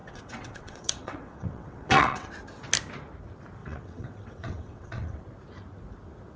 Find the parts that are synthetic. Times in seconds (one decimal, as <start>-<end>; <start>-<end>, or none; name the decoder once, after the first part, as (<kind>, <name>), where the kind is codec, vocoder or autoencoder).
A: 0.0-2.3 (vocoder, WaveNeXt); 3.6-5.2